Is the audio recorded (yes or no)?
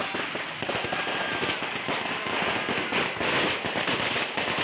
yes